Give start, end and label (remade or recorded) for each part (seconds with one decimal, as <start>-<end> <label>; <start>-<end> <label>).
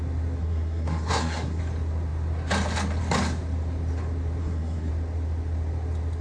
0.0-0.4 recorded; 0.4-1.6 remade; 1.6-4.4 recorded; 4.4-4.9 remade; 4.9-6.2 recorded